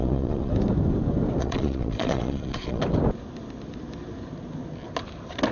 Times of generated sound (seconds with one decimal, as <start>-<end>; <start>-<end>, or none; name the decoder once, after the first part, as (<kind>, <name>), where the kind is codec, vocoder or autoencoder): 0.0-0.5 (vocoder, Vocos); 1.4-2.8